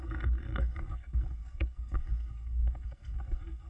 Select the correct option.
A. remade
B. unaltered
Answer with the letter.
A